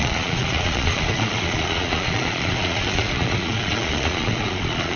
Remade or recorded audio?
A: remade